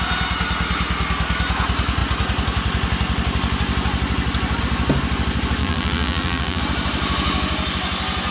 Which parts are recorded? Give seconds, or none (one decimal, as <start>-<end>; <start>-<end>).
0.0-5.6; 6.6-8.3